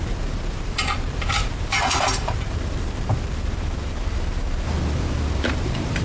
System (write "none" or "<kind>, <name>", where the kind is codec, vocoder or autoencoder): vocoder, BigVGAN v2